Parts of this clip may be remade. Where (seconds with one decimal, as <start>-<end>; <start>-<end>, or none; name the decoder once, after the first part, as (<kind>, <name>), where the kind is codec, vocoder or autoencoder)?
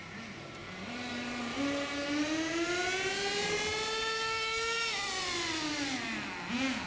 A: none